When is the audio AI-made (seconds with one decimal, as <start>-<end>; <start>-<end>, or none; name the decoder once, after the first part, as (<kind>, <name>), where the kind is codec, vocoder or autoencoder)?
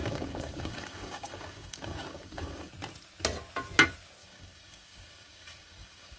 0.0-2.7 (codec, DAC); 4.2-6.2